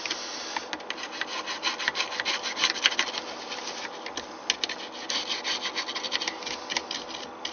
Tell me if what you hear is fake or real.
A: real